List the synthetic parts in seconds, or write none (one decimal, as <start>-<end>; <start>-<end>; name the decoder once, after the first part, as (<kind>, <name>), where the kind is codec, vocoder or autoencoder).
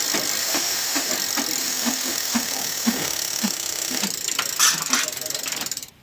0.4-1.1 (autoencoder, DAC-VAE); 1.6-4.0